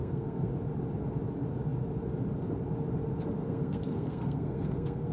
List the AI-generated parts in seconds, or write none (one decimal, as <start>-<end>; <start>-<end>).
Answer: 0.0-0.5; 3.4-5.1